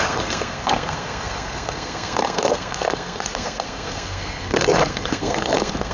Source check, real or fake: fake